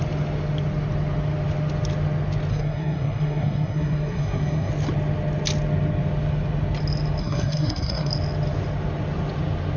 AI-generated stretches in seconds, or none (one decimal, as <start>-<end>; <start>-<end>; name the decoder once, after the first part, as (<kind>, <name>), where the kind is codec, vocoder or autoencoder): 2.5-4.7 (codec, SNAC); 7.2-8.1